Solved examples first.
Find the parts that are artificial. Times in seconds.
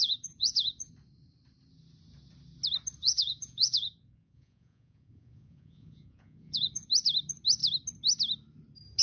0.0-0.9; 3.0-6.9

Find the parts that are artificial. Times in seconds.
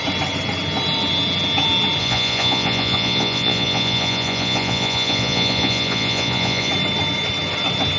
2.0-6.7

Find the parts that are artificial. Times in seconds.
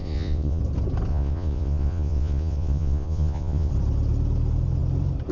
0.0-0.6; 1.1-3.7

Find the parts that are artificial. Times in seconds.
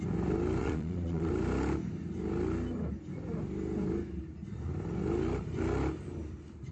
0.6-1.3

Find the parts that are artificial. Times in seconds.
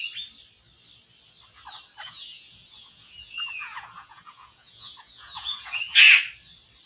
2.0-6.1